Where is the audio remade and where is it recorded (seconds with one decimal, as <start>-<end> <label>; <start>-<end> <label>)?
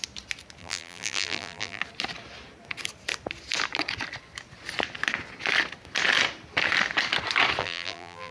0.0-0.6 recorded; 0.6-1.8 remade; 1.8-7.6 recorded; 7.6-8.3 remade